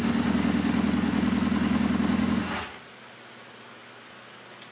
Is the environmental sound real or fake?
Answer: real